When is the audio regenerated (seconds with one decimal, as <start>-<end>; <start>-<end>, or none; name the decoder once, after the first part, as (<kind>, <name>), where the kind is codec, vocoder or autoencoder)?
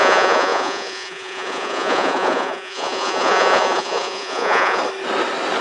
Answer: 0.0-4.8 (vocoder, Vocos)